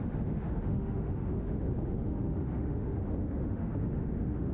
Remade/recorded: remade